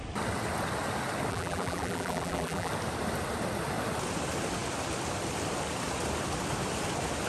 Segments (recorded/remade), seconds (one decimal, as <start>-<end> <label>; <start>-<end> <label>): 0.0-1.3 recorded; 1.3-2.7 remade; 2.7-7.3 recorded